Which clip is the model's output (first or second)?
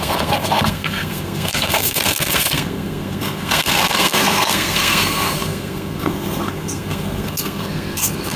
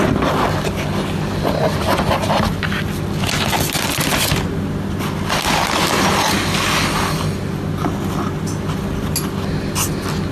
first